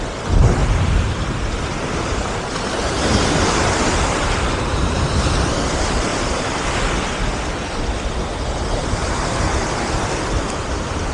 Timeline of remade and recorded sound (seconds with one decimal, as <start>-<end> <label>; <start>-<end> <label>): 0.0-0.6 recorded; 0.6-5.2 remade; 5.2-6.1 recorded; 6.1-6.8 remade; 6.8-9.0 recorded; 9.0-9.9 remade; 9.9-11.1 recorded